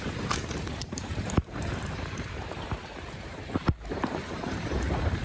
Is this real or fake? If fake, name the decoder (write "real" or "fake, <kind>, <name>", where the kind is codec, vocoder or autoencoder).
fake, vocoder, BigVGAN v2